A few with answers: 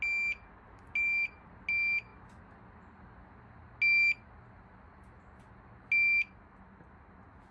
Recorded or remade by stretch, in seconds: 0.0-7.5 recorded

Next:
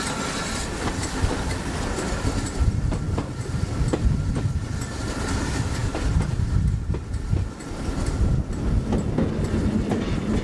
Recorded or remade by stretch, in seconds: 0.0-10.4 recorded

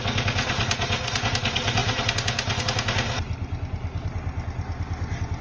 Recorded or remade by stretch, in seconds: 0.0-5.4 recorded

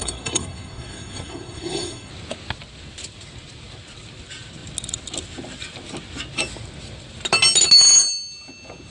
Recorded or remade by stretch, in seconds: 0.0-2.1 remade; 2.1-8.9 recorded

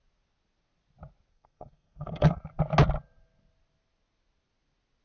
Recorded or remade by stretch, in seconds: 0.0-1.3 recorded; 1.3-2.4 remade; 2.4-5.0 recorded

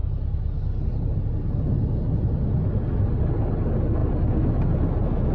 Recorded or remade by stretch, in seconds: 0.0-5.3 recorded